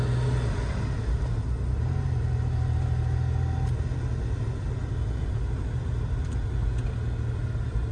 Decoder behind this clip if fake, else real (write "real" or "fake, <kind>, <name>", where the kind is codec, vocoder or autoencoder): real